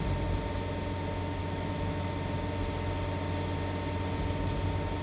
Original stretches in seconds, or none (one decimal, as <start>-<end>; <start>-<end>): 0.0-1.4; 2.1-5.0